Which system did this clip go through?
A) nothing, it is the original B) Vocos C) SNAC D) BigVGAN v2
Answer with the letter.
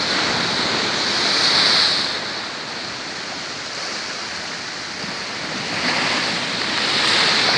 A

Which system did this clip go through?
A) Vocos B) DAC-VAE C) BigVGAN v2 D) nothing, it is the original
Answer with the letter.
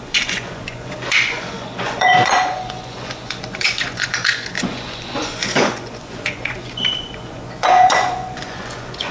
A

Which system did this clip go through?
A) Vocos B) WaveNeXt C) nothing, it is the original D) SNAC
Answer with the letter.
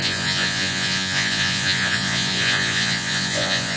A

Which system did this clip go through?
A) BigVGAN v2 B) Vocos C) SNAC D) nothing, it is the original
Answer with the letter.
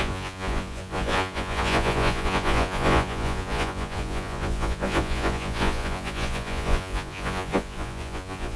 B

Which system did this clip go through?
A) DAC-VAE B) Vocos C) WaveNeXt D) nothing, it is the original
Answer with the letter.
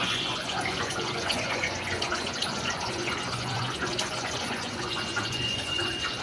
B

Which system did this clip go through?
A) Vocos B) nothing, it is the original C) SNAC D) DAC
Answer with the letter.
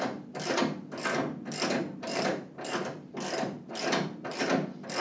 B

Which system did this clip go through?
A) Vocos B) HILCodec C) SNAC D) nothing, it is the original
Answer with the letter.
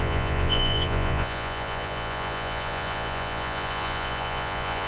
A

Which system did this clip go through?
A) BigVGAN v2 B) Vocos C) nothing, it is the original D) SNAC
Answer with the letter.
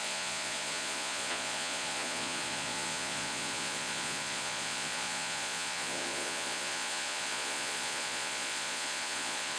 B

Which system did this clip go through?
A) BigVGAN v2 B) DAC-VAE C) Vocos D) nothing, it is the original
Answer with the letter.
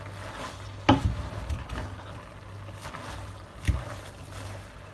D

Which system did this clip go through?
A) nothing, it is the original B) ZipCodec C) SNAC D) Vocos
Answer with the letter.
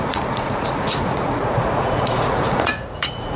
D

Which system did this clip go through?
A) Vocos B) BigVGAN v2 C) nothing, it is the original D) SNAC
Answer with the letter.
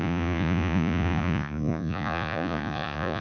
A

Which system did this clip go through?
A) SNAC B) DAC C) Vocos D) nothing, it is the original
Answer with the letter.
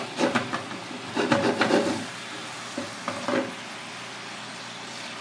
D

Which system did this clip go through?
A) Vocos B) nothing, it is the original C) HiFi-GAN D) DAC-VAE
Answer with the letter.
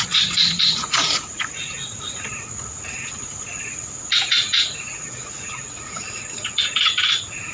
A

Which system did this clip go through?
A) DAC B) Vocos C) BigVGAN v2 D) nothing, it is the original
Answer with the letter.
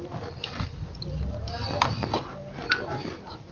D